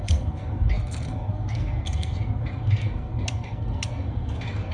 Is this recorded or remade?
remade